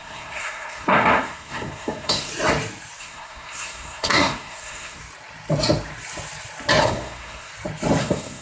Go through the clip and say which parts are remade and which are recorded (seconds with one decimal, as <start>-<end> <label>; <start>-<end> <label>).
0.0-2.3 remade; 2.3-3.0 recorded; 3.0-5.0 remade; 5.0-6.8 recorded; 6.8-7.5 remade; 7.5-8.0 recorded; 8.0-8.4 remade

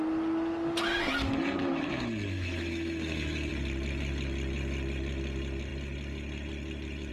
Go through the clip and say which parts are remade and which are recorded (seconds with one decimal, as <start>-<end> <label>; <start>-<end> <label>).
0.0-1.6 recorded; 1.6-3.5 remade; 3.5-7.1 recorded

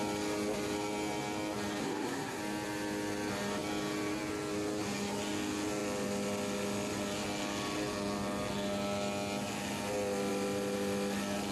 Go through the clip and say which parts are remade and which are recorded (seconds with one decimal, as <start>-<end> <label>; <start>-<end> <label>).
0.0-1.8 recorded; 1.8-2.4 remade; 2.4-11.5 recorded

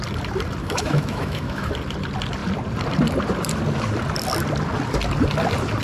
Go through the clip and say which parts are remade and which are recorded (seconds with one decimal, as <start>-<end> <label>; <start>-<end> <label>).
0.0-0.6 recorded; 0.6-1.7 remade; 1.7-5.8 recorded